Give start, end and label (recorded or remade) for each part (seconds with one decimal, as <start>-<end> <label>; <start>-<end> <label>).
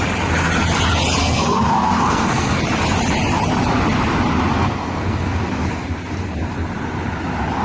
0.0-1.2 recorded; 1.2-2.6 remade; 2.6-4.5 recorded; 4.5-5.4 remade; 5.4-7.6 recorded